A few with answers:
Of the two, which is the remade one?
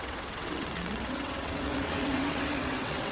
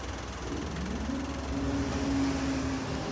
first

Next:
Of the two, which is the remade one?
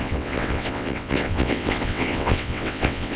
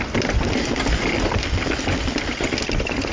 first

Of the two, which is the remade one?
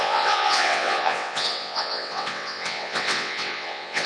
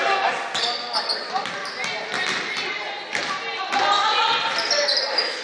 first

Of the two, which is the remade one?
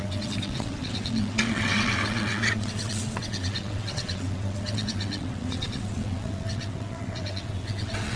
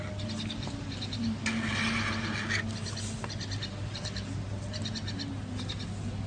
first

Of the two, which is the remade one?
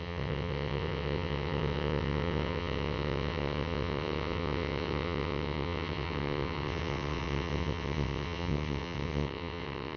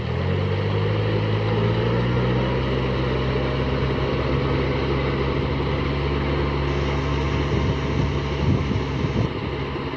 first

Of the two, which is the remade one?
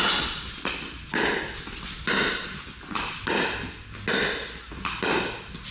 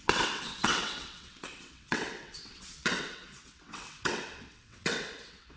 second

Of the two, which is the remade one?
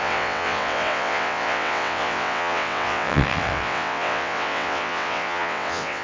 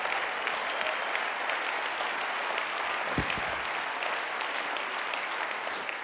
first